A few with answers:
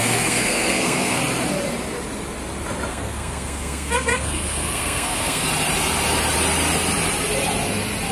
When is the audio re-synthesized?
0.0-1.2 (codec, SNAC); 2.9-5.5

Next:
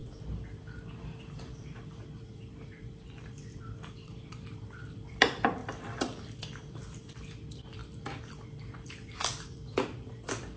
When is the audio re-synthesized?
1.6-10.6 (vocoder, BigVGAN v2)

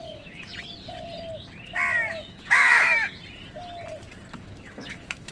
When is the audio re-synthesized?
0.0-0.5 (autoencoder, DAC-VAE); 2.3-3.1; 4.4-5.3

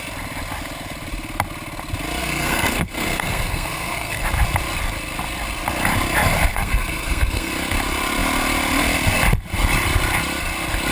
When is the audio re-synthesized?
2.2-4.2 (codec, SNAC); 6.5-7.5

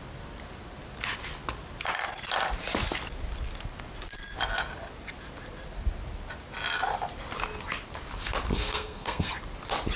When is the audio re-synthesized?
8.5-9.3 (codec, SNAC)